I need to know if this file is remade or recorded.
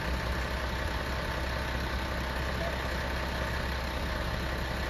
recorded